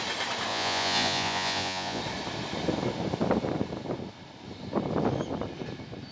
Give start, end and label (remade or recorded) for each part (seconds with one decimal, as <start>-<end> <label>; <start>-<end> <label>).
0.0-0.5 recorded; 0.5-2.0 remade; 2.0-6.1 recorded